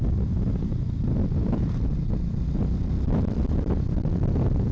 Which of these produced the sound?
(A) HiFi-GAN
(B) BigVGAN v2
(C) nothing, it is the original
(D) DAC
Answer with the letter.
C